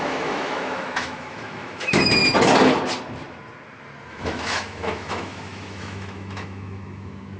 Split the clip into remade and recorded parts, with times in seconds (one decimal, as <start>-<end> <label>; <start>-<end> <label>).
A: 0.0-2.2 remade; 2.2-4.1 recorded; 4.1-7.4 remade